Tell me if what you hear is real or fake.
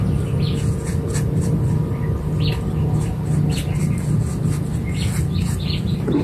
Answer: real